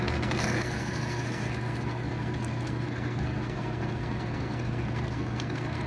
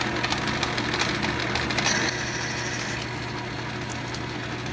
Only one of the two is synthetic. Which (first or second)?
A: first